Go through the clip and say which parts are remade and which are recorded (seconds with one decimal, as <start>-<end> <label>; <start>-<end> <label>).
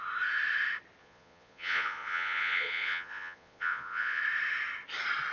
0.0-1.0 recorded; 1.0-4.2 remade; 4.2-5.3 recorded